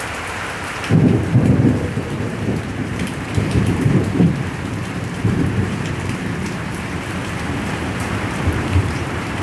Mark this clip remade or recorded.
remade